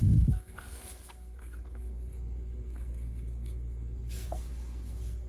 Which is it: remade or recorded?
remade